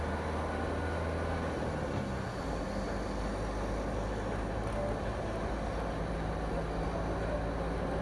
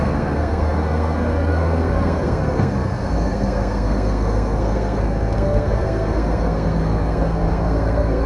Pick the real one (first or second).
first